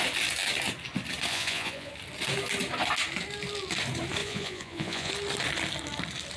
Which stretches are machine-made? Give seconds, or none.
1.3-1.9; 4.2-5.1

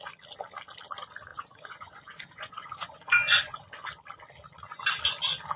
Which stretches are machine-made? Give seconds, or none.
1.3-3.6

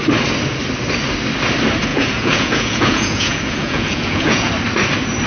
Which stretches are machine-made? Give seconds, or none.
1.9-4.5

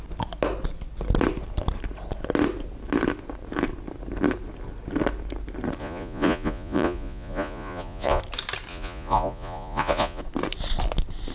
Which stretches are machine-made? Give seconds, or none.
5.8-8.2; 8.7-10.2

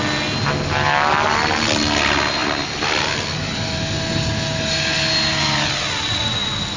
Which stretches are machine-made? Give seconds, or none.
none

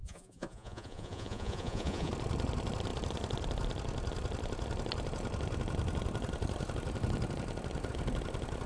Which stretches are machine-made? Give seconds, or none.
0.0-2.1

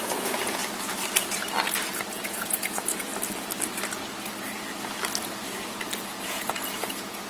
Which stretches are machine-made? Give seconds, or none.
0.0-0.6; 2.2-3.1; 6.1-7.3

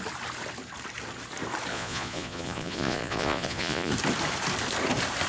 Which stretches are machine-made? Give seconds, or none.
1.7-3.9